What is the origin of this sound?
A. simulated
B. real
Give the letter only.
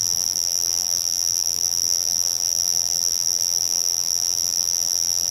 A